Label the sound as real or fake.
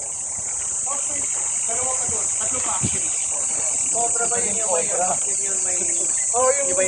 real